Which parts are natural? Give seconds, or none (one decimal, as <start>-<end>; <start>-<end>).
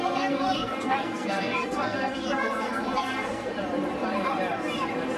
3.5-5.2